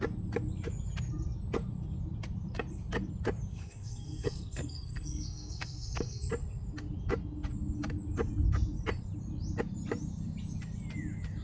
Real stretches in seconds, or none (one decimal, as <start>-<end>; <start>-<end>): 0.0-3.5; 6.3-11.4